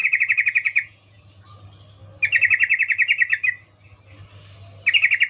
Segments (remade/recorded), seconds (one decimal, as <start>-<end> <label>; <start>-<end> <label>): 0.0-1.2 remade; 1.2-5.3 recorded